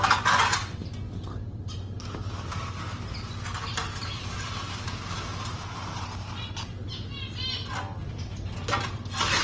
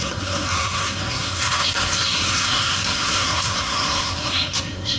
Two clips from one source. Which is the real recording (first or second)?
first